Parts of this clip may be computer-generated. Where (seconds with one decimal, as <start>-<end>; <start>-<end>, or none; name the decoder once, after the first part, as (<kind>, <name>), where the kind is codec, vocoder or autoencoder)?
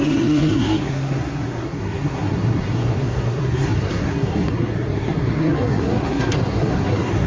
0.0-7.3 (codec, SNAC)